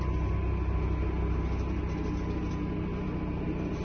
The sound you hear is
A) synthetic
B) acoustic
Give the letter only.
B